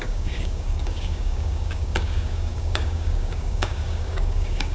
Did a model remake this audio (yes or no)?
yes